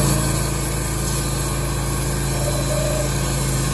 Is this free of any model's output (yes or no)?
yes